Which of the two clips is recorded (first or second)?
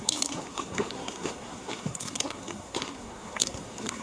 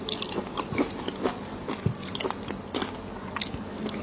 second